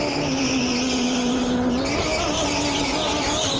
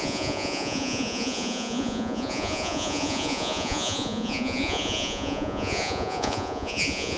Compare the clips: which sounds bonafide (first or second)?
first